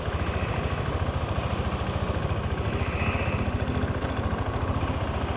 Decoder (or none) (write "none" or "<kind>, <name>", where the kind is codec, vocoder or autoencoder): none